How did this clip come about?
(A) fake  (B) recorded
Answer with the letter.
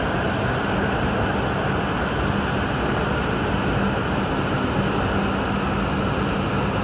B